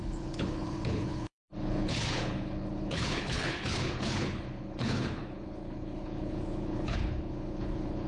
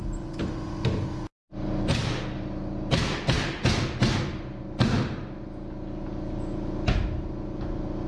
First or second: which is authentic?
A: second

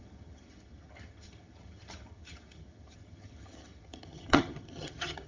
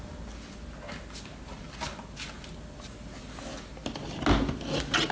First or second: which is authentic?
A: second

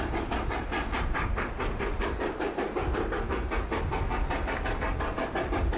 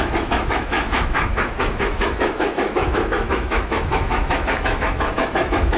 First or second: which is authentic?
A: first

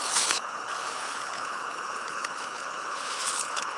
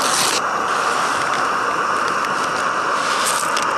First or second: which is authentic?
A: second